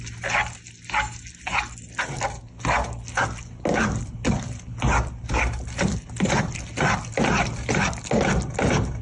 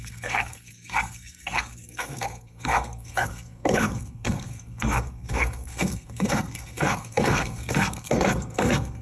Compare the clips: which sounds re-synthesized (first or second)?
second